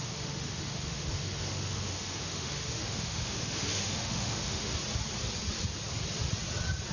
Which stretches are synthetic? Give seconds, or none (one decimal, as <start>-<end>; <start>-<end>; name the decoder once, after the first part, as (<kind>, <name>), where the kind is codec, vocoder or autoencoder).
0.0-4.7 (autoencoder, DAC-VAE)

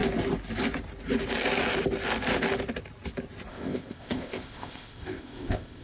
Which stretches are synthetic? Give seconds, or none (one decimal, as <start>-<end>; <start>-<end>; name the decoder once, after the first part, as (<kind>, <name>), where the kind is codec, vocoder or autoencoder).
3.5-5.8 (codec, ZipCodec)

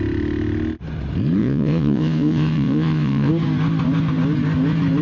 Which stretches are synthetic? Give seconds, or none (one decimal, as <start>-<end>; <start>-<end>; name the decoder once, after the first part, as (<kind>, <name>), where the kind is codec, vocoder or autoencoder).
1.4-3.3 (vocoder, WaveNeXt)

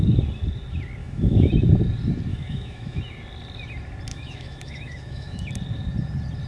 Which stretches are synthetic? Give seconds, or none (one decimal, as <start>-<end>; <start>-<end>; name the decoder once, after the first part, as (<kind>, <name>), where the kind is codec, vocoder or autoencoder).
1.0-1.5 (autoencoder, DAC-VAE); 2.3-3.0; 4.1-5.5

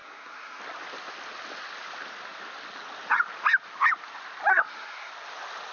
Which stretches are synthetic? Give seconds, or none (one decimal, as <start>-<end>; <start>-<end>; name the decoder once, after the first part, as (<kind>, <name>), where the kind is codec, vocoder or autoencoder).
0.0-0.6 (codec, SNAC); 4.5-5.1

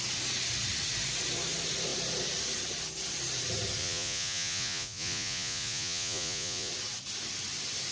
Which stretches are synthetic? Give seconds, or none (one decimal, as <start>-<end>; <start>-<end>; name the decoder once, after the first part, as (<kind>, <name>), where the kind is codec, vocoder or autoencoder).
3.8-6.7 (vocoder, Vocos)

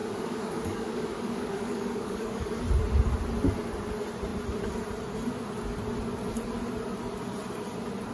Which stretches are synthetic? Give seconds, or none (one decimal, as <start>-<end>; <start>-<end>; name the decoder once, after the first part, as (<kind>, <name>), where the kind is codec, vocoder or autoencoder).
0.0-2.6 (codec, DAC)